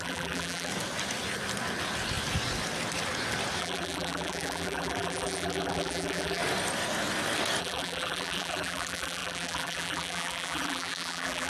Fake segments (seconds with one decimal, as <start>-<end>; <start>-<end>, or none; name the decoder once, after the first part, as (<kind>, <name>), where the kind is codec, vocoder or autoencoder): 0.0-0.7 (vocoder, BigVGAN v2); 3.6-6.4; 7.6-11.5